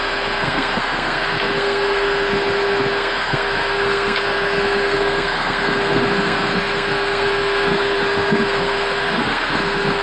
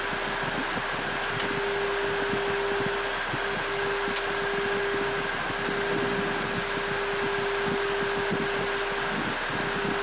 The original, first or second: second